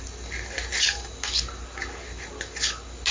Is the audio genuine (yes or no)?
yes